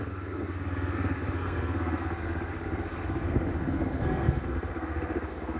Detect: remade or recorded remade